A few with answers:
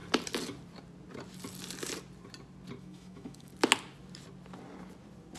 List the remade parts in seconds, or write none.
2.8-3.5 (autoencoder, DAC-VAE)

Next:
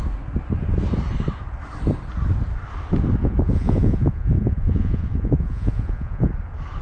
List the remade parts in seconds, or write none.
3.2-6.3 (vocoder, Vocos)

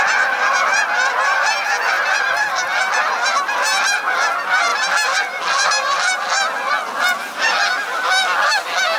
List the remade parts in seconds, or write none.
none